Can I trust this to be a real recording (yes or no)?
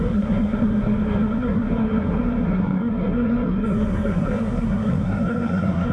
no